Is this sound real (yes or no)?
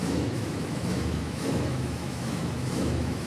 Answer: no